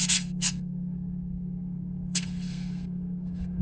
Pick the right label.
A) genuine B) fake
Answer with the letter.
B